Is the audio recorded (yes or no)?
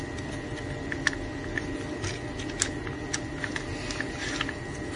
yes